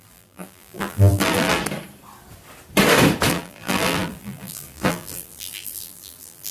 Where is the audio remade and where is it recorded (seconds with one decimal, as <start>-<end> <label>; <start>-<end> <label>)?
0.0-1.6 remade; 1.6-3.3 recorded; 3.3-6.5 remade